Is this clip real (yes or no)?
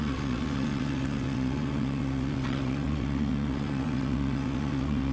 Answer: no